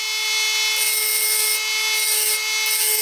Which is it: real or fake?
real